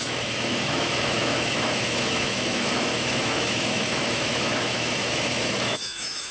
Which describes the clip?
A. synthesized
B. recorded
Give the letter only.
A